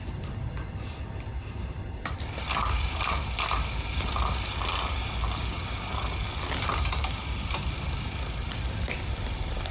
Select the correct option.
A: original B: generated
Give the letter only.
A